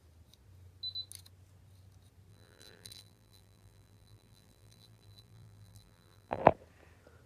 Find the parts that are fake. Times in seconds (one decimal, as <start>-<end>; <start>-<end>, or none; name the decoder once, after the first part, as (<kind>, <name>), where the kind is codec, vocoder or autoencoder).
2.3-6.4 (vocoder, BigVGAN v2)